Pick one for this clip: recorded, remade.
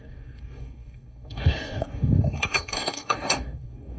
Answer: remade